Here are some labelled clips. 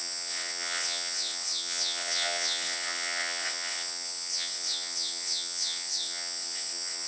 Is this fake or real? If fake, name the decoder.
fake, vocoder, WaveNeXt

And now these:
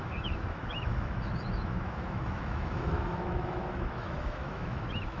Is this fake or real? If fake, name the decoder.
fake, autoencoder, DAC-VAE